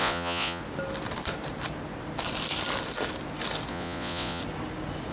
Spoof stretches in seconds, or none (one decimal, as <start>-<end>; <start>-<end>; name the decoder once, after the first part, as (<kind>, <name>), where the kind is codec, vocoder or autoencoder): 0.0-0.6 (vocoder, Vocos); 3.7-4.4